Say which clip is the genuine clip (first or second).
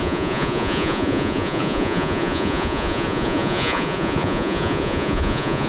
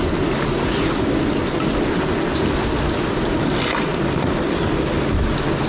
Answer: second